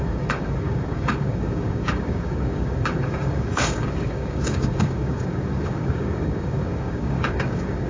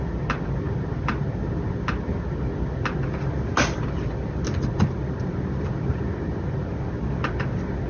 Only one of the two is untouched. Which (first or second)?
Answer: second